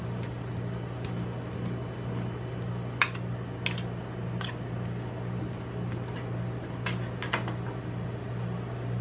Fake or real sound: real